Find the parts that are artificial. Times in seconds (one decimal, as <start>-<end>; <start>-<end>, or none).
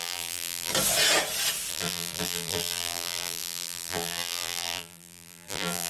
0.0-0.7; 1.7-5.9